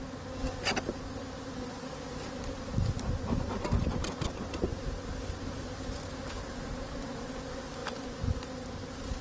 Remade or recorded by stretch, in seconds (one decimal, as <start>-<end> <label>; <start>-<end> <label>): 0.0-9.2 recorded